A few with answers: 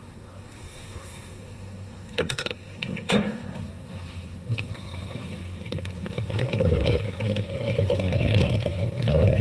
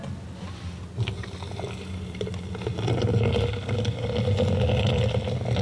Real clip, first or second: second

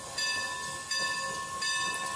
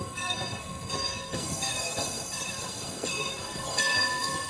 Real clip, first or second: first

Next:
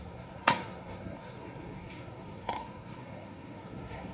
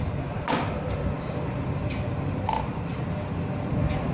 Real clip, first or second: second